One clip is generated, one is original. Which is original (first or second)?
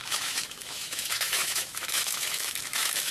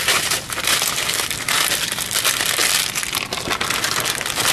second